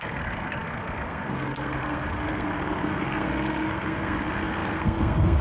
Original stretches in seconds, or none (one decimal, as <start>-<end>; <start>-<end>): none